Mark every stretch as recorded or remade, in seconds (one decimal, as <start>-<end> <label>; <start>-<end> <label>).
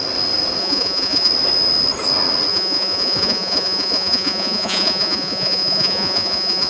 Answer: 0.0-0.6 recorded; 0.6-1.3 remade; 1.3-2.5 recorded; 2.5-6.7 remade